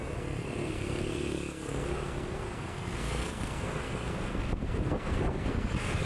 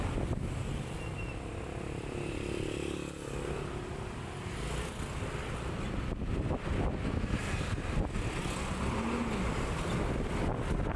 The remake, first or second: first